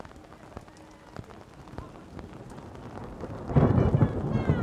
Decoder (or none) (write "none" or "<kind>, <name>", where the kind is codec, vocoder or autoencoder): none